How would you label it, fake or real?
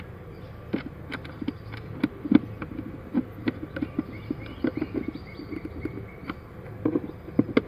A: real